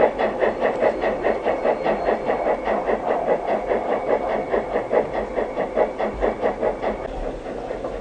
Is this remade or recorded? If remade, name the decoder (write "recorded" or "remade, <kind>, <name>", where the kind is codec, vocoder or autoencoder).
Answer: recorded